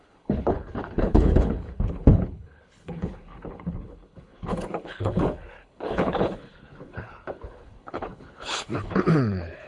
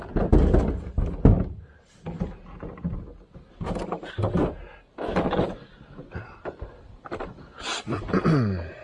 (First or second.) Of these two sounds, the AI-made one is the first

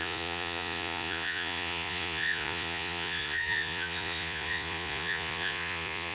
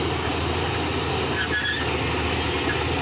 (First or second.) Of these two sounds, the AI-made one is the first